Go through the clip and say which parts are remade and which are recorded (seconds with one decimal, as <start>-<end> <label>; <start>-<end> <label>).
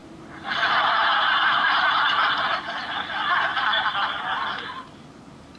0.0-1.9 remade; 1.9-5.6 recorded